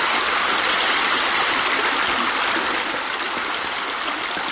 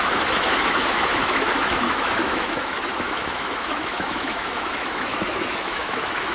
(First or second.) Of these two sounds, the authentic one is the first